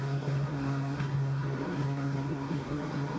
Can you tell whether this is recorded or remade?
remade